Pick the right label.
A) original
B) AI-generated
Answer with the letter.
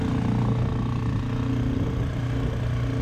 A